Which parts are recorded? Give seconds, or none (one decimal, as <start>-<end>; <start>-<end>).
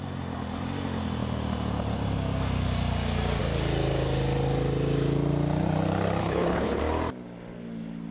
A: 0.0-6.2; 6.8-8.1